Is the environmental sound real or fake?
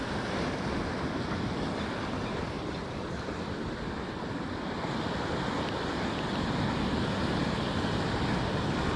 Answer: real